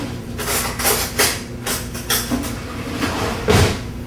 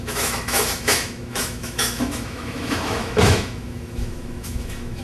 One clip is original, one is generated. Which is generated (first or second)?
second